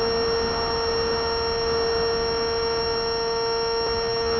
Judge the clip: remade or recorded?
recorded